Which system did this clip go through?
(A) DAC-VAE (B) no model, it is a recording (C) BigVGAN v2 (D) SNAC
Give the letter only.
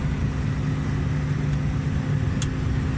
B